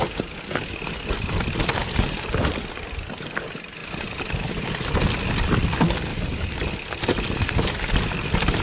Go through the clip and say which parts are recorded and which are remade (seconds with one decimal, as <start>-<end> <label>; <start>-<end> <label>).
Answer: 0.0-1.8 recorded; 1.8-2.4 remade; 2.4-6.1 recorded; 6.1-6.7 remade; 6.7-8.6 recorded